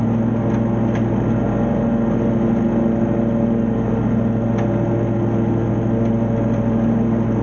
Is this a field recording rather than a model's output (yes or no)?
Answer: yes